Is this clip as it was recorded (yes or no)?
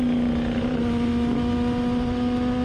yes